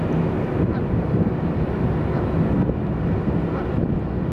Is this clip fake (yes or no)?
no